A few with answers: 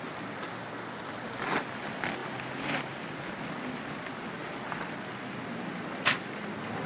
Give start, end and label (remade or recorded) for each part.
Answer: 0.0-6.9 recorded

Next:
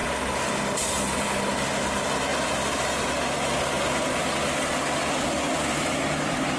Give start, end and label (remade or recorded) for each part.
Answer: 0.0-1.7 recorded; 1.7-2.3 remade; 2.3-6.0 recorded; 6.0-6.6 remade

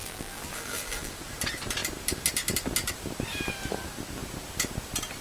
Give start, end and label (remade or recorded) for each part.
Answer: 0.0-1.1 remade; 1.1-5.2 recorded